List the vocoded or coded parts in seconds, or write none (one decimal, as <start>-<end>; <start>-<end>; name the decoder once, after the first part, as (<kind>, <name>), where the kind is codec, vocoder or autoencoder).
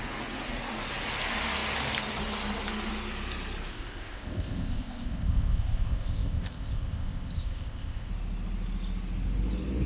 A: 3.7-8.1 (codec, ZipCodec)